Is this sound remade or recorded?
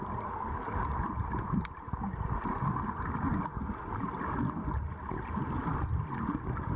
recorded